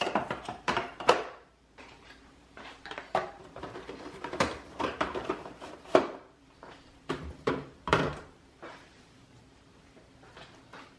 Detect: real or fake fake